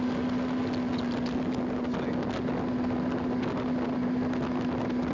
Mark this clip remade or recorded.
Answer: recorded